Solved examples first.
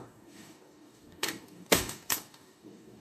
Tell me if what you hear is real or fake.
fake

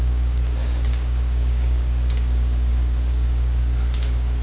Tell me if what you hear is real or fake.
fake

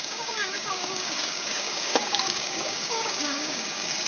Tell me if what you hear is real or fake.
fake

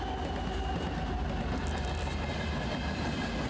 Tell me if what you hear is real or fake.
real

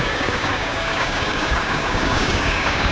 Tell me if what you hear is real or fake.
fake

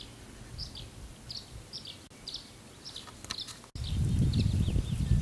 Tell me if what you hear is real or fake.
real